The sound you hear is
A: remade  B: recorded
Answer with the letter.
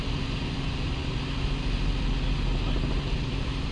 B